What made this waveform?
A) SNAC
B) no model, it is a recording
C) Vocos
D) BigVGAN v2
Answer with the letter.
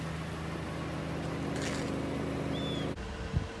B